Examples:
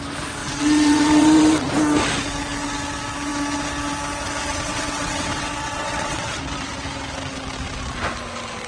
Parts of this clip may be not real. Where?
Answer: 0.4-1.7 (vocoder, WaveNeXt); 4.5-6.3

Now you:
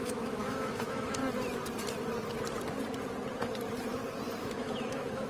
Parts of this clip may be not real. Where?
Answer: 0.0-1.2 (autoencoder, DAC-VAE); 4.4-5.3